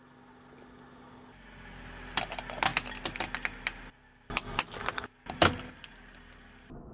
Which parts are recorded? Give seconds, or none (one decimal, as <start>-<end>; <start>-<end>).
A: 0.0-6.9